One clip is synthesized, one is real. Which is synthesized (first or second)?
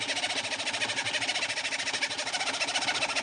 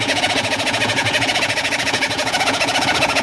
second